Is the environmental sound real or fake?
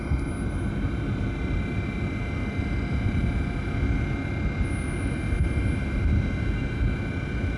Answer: real